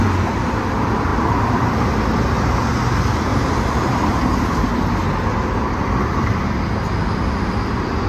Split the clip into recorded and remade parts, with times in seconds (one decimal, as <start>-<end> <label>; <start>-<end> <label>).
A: 0.0-1.1 recorded; 1.1-1.7 remade; 1.7-3.3 recorded; 3.3-4.1 remade; 4.1-8.1 recorded